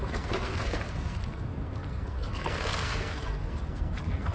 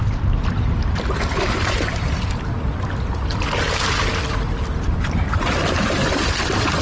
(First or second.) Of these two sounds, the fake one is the first